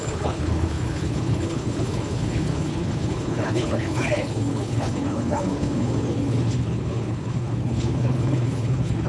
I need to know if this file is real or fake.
fake